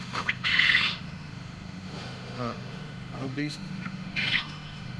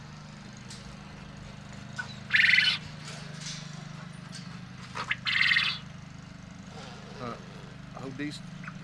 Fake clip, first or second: first